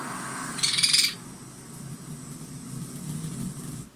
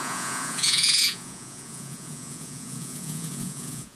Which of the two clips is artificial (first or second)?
second